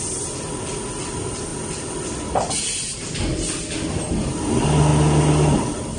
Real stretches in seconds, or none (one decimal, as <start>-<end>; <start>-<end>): 0.0-2.9; 3.6-6.0